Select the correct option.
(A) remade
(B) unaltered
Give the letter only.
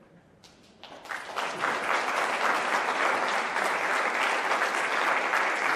B